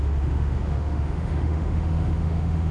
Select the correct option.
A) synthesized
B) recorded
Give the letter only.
A